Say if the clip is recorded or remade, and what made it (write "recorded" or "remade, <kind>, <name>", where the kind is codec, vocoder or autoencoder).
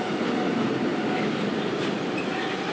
recorded